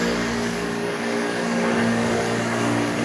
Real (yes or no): no